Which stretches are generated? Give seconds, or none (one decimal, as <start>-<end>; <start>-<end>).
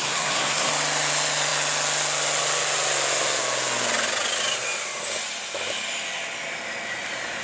0.0-0.7